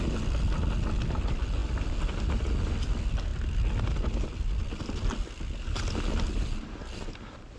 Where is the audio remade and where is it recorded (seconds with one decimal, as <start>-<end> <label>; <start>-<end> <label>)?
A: 0.0-7.6 recorded